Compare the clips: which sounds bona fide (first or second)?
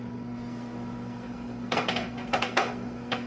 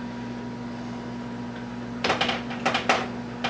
second